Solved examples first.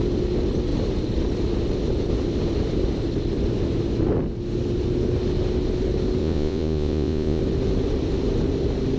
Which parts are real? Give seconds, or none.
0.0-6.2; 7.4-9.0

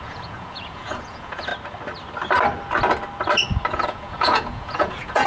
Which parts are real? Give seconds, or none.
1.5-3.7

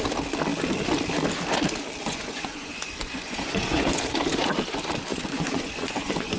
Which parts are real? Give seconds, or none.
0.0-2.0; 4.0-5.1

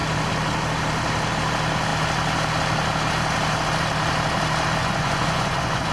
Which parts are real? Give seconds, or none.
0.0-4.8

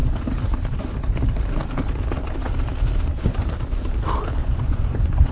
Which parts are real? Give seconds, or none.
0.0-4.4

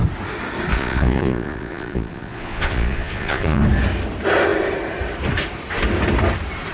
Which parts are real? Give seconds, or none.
0.0-0.7; 3.6-6.7